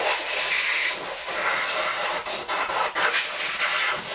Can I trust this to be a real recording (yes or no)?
yes